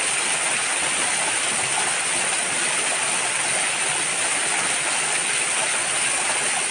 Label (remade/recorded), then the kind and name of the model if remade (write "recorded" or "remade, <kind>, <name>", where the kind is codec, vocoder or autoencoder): recorded